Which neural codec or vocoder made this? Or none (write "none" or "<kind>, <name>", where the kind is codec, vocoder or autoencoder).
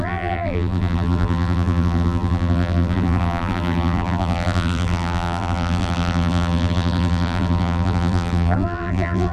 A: vocoder, BigVGAN v2